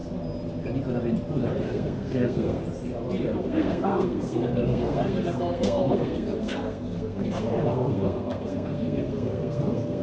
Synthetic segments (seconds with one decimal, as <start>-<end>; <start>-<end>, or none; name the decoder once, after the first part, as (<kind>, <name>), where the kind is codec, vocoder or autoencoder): 1.6-2.6 (codec, SNAC); 3.4-10.0